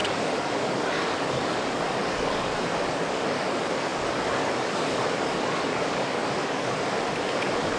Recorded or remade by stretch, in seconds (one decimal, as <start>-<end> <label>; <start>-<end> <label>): 0.0-7.8 remade